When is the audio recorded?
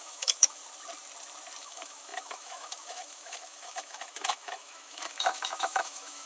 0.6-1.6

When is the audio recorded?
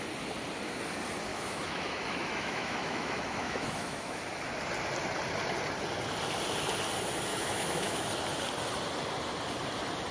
0.0-1.3; 4.2-7.3; 8.1-10.1